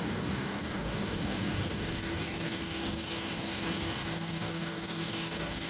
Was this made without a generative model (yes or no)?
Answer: no